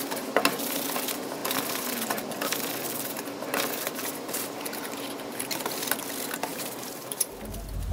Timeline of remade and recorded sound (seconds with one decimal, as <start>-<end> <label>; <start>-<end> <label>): 0.0-6.5 recorded; 6.5-7.3 remade; 7.3-7.9 recorded